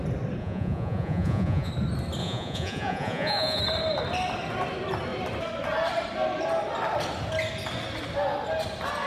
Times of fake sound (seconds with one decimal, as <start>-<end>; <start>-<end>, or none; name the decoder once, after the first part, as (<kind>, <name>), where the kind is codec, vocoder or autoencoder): 0.4-1.7 (vocoder, Vocos); 2.2-3.6